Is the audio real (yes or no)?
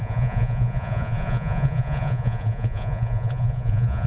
no